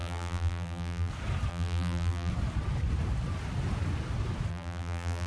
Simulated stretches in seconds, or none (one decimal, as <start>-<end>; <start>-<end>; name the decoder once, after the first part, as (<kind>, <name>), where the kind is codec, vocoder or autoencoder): 0.0-1.1 (vocoder, BigVGAN v2); 1.5-2.3; 4.5-5.3